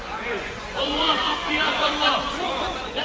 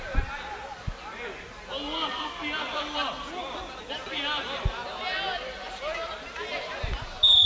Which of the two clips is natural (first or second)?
second